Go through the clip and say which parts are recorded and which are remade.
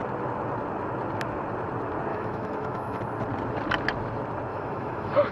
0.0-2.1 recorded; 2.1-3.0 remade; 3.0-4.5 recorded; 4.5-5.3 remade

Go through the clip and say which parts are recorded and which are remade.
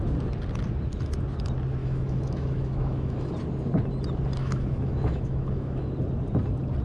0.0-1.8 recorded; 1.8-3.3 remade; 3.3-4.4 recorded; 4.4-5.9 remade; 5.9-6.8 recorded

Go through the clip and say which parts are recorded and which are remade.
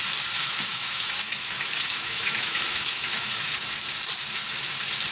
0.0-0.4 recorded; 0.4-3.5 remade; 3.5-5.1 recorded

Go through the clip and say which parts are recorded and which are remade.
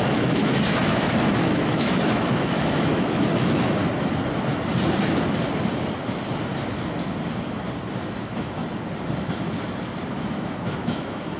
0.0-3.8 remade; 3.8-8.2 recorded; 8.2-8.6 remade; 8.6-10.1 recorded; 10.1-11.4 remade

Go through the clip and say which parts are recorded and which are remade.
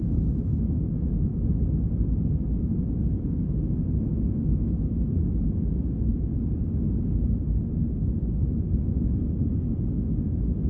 0.0-1.3 remade; 1.3-3.0 recorded; 3.0-6.3 remade; 6.3-9.9 recorded; 9.9-10.7 remade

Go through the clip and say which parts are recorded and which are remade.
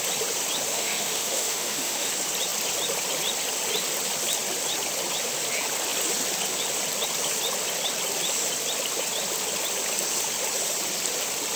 0.0-0.7 recorded; 0.7-2.1 remade; 2.1-11.6 recorded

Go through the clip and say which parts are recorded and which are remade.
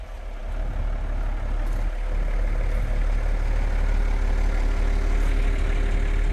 0.0-6.3 recorded